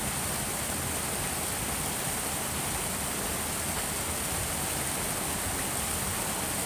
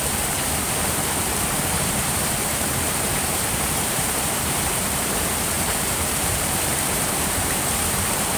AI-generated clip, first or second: second